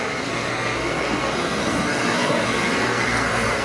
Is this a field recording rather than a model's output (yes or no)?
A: no